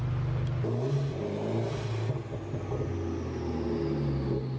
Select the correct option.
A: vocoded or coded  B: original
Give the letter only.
B